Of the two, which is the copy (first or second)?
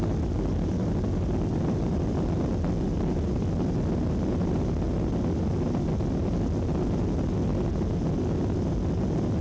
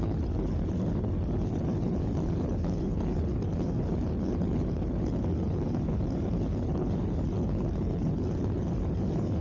second